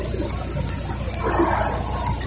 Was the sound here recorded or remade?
recorded